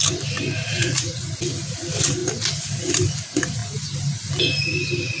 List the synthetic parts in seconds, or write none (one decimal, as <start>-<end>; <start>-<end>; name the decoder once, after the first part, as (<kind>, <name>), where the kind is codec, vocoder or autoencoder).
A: 0.8-1.3 (vocoder, Vocos)